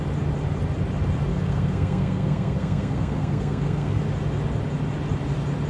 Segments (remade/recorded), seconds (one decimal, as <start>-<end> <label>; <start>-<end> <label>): 0.0-1.3 recorded; 1.3-4.0 remade; 4.0-5.7 recorded